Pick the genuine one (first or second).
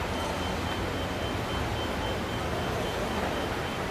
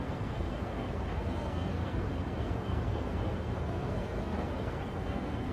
first